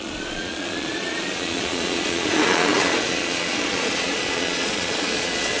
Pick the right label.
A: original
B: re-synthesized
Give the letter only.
B